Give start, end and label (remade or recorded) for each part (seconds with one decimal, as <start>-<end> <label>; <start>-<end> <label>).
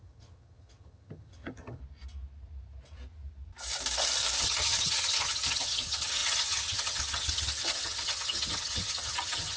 0.0-1.8 remade; 1.8-4.4 recorded; 4.4-9.6 remade